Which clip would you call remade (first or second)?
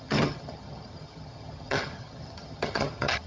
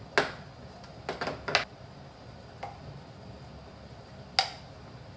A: first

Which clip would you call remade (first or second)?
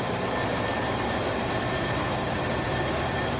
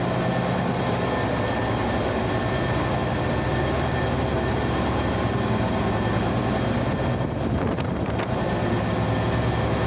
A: first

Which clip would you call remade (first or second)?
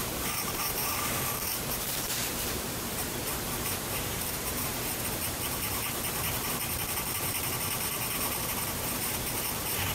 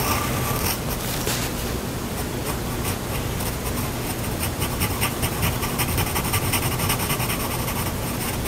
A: first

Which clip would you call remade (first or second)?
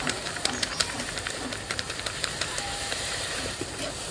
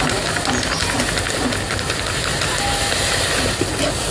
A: first